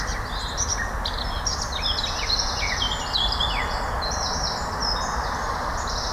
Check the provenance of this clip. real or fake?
real